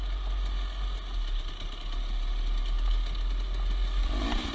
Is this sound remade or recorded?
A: recorded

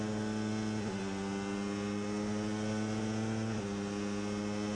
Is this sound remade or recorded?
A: recorded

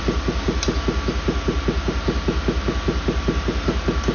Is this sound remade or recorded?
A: recorded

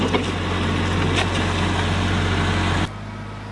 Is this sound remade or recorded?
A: recorded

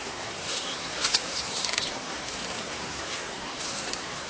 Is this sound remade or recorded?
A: remade